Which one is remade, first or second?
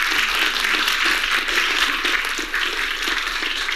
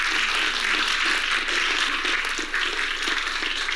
first